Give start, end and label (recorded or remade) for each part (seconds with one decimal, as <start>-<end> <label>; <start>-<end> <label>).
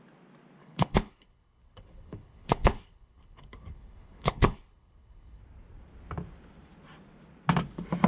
0.0-0.6 recorded; 0.6-5.4 remade; 5.4-8.1 recorded